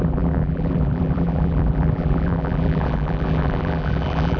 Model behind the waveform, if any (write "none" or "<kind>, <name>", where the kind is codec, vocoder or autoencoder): vocoder, BigVGAN v2